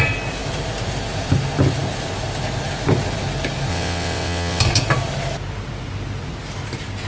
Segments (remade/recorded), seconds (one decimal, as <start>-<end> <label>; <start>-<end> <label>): 0.0-3.7 recorded; 3.7-4.6 remade; 4.6-7.1 recorded